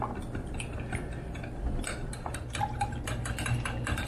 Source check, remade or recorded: recorded